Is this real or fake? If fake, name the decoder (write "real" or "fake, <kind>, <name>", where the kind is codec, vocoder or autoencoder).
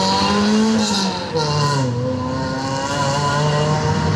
real